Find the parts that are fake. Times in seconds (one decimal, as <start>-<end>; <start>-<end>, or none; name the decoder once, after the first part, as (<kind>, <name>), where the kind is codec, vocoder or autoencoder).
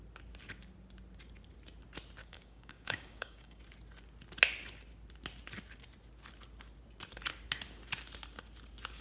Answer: 2.2-3.6 (codec, DAC)